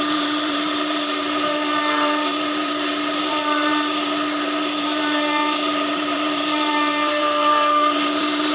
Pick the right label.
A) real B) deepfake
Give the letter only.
B